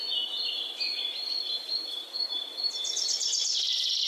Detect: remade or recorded remade